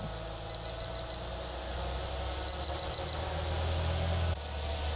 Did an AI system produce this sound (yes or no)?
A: no